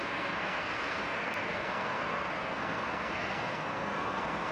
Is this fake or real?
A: fake